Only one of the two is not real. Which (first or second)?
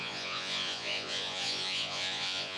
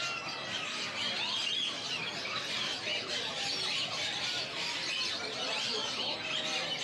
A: first